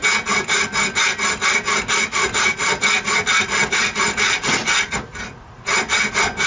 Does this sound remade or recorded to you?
recorded